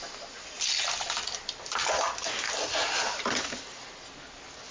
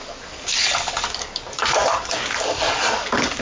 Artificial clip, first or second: second